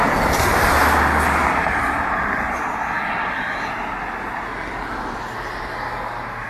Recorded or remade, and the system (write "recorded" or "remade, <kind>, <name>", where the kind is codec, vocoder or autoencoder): recorded